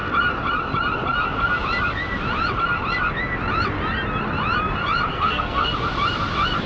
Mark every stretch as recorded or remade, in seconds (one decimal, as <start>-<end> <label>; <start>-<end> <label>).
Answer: 0.0-5.1 recorded; 5.1-5.7 remade; 5.7-6.7 recorded